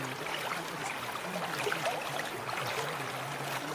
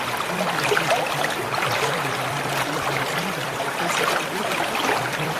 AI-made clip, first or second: second